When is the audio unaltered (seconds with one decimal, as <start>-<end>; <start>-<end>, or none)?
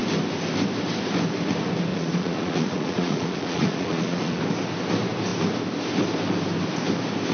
0.0-1.9; 4.4-7.3